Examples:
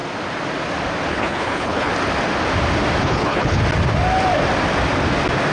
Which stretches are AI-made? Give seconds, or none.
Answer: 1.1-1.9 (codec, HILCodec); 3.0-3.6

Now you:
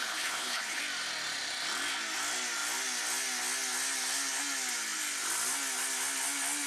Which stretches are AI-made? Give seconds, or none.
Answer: 0.0-0.8 (codec, HILCodec)

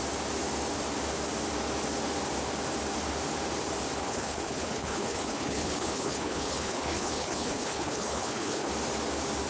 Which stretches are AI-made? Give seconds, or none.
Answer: 4.0-8.7 (codec, HILCodec)

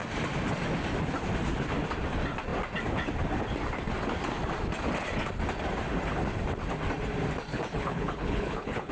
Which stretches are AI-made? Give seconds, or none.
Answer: 7.5-8.9 (codec, HILCodec)

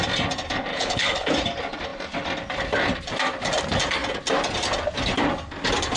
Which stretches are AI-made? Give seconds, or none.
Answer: 0.7-1.3 (codec, HILCodec)

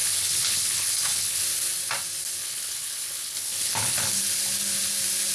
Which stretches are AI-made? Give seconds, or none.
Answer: 0.0-1.4 (codec, HILCodec); 2.4-4.2

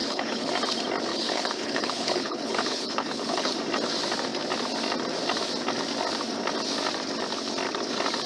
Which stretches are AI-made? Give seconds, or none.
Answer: 0.0-0.5 (codec, HILCodec); 1.1-3.5